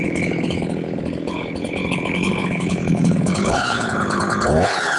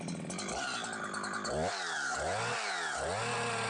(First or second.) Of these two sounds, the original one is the second